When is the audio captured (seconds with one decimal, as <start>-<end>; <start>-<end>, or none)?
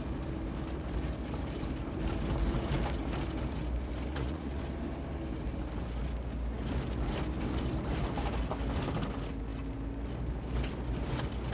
0.0-4.1; 4.6-11.5